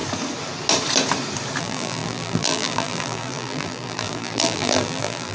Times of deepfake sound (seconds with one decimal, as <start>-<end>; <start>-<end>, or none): 1.6-5.3